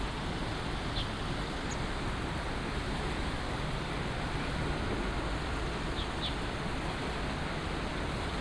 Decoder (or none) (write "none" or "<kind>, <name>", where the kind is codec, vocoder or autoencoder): none